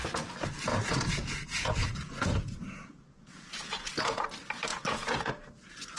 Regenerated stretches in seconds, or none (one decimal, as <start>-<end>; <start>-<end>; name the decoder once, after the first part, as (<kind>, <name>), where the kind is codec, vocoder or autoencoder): 0.7-4.3 (vocoder, Vocos); 4.7-5.3

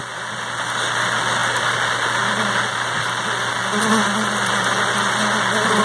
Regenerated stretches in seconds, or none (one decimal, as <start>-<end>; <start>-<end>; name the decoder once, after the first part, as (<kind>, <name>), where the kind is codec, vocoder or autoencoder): none

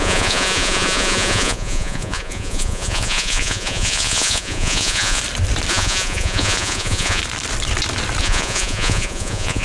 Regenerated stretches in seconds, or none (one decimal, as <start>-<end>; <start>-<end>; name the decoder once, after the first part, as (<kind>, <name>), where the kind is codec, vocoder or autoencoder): 0.0-5.2 (vocoder, Vocos); 5.7-7.2; 8.2-9.6

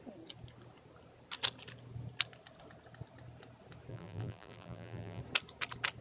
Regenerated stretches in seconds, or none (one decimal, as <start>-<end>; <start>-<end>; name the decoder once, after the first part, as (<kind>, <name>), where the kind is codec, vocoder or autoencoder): 3.9-5.2 (vocoder, BigVGAN v2)

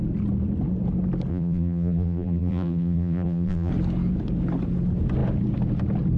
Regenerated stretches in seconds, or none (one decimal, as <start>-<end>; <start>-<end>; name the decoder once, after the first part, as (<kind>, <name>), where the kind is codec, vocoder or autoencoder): 1.3-3.7 (vocoder, BigVGAN v2)